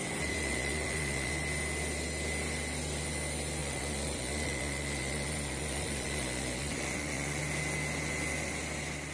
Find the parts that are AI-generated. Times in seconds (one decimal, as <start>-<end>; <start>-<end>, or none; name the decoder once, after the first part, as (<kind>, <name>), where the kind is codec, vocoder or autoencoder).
0.0-1.3 (vocoder, Vocos); 3.6-7.4